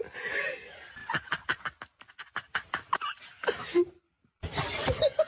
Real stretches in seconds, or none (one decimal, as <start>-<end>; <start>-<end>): 0.0-5.3